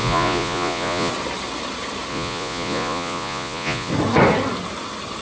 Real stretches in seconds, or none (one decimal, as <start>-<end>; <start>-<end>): 1.1-2.1; 3.9-5.2